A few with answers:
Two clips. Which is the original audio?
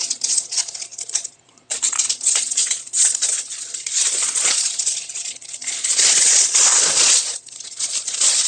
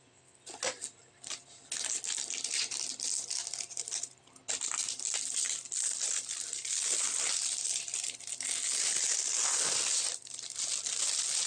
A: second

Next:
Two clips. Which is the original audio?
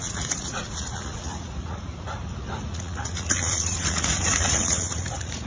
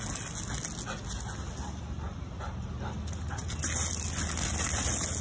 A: second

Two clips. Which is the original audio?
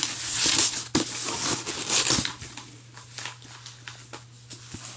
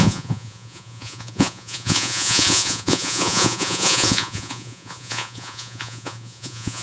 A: first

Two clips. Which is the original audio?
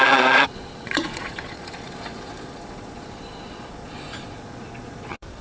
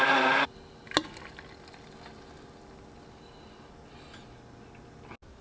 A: second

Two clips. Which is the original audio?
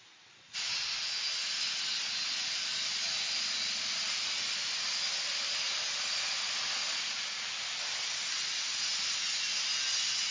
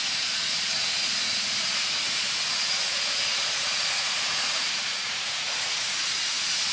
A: first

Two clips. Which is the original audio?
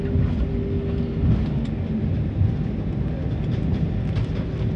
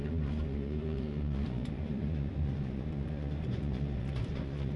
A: first